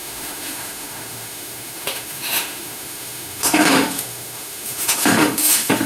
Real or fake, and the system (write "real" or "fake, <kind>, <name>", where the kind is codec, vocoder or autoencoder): fake, autoencoder, DAC-VAE